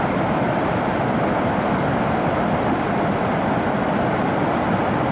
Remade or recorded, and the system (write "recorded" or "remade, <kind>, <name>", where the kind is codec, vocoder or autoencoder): recorded